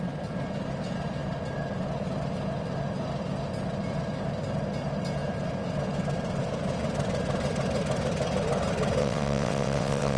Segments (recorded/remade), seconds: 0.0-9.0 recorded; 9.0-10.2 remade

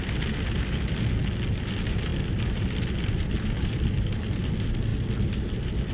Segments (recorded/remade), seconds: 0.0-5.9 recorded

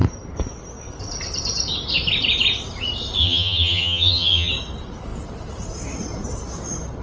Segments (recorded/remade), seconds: 0.0-3.2 recorded; 3.2-4.5 remade; 4.5-7.0 recorded

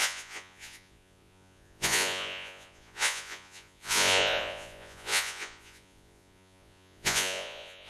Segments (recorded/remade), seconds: 0.0-7.9 remade